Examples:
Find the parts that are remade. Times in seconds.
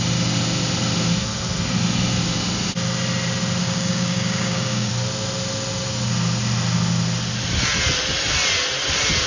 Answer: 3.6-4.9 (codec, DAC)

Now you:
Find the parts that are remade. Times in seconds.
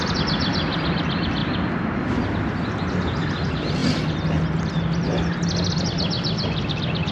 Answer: none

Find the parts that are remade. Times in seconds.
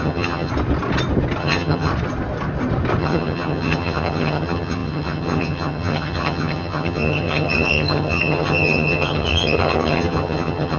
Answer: 0.0-0.5 (vocoder, HiFi-GAN); 1.4-1.9; 3.0-10.8